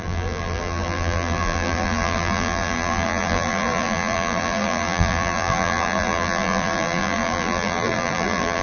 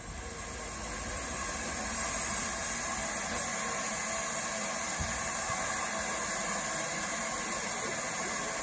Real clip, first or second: second